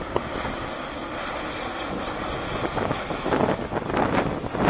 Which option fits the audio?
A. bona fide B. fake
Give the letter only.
A